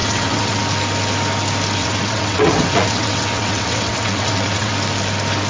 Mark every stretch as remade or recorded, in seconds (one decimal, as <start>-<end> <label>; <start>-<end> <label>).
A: 0.0-0.6 remade; 0.6-1.8 recorded; 1.8-4.7 remade; 4.7-5.5 recorded